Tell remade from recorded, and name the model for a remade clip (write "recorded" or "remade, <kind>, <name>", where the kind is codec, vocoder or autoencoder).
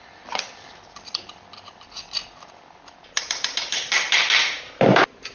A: remade, vocoder, BigVGAN v2